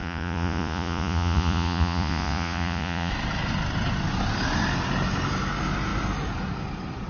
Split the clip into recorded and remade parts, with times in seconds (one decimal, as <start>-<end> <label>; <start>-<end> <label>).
0.0-3.1 remade; 3.1-7.1 recorded